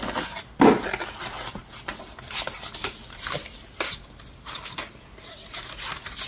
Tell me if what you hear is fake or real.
real